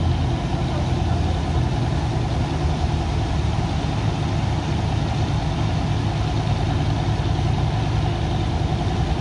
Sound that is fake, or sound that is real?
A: real